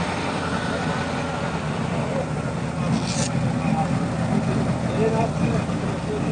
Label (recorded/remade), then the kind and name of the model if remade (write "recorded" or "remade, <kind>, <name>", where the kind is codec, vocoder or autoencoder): recorded